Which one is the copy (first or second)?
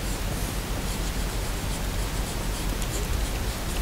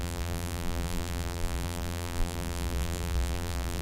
second